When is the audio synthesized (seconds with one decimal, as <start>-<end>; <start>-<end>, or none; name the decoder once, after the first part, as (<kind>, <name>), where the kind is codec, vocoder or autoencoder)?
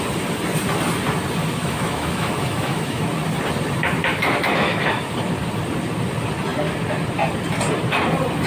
1.4-3.0 (autoencoder, DAC-VAE); 4.1-5.1